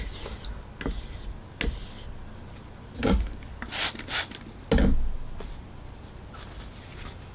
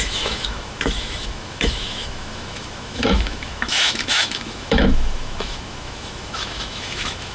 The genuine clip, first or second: first